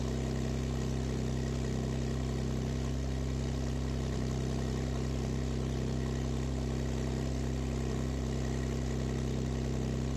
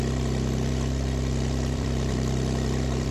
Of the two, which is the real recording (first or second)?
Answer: first